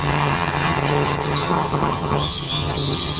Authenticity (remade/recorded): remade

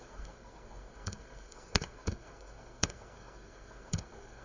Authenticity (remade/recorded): remade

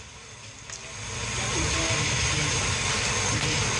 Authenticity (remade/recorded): remade